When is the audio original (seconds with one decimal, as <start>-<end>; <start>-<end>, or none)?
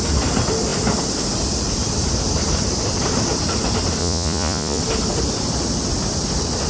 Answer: 0.0-4.0; 4.8-6.7